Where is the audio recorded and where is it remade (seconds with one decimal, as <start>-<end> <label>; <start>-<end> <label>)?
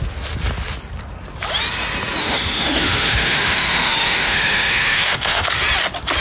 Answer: 0.0-2.2 recorded; 2.2-5.5 remade; 5.5-6.2 recorded